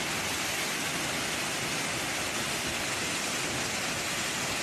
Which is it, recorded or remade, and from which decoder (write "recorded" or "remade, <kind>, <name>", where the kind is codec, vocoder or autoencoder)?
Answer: recorded